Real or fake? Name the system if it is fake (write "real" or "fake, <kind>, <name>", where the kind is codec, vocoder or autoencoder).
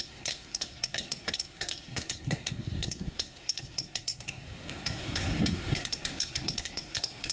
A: fake, codec, SNAC